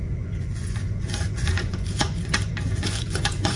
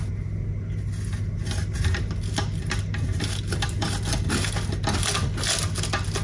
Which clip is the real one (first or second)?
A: second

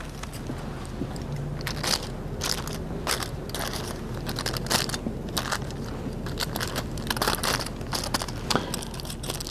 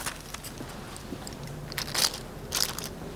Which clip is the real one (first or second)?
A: first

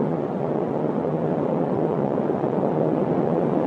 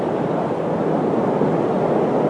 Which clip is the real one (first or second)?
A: second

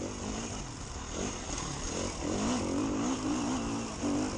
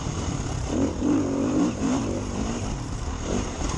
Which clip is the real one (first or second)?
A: first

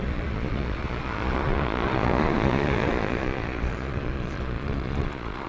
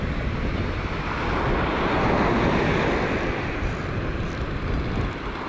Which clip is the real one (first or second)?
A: second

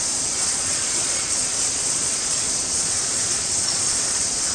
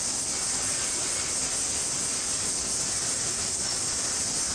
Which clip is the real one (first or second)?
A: second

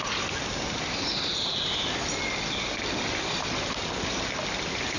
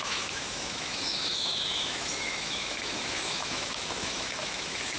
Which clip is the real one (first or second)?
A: first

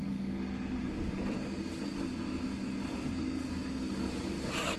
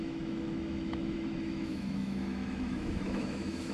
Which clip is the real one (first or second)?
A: first